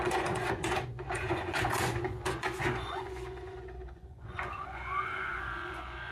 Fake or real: fake